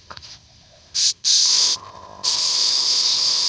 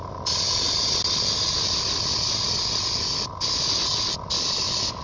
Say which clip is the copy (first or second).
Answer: first